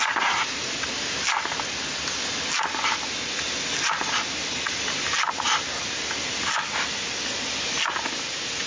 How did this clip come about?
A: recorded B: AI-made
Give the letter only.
A